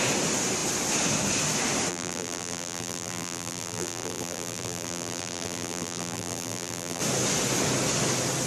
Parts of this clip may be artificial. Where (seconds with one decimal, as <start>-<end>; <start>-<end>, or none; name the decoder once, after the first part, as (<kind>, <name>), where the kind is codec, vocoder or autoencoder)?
1.9-7.0 (vocoder, BigVGAN v2)